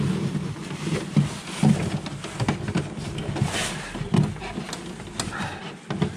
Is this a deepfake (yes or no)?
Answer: no